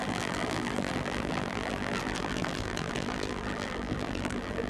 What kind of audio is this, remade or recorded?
remade